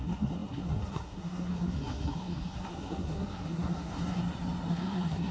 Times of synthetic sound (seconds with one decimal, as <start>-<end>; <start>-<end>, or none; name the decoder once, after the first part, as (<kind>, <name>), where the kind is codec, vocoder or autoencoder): 0.0-4.2 (codec, SNAC); 4.7-5.3